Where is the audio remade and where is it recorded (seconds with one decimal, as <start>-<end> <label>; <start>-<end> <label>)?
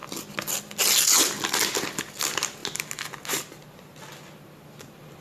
0.0-5.2 recorded